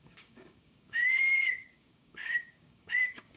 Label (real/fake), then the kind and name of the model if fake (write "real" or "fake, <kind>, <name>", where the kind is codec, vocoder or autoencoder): fake, codec, DAC